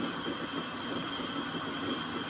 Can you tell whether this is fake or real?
real